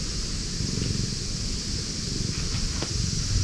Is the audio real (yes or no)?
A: yes